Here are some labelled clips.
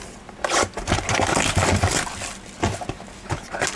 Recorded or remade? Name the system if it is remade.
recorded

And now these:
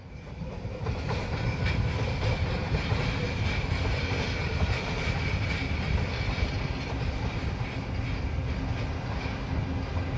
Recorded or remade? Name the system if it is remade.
recorded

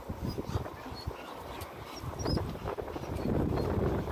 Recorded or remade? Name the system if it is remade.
recorded